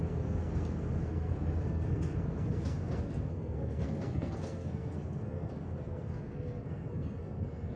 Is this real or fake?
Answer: fake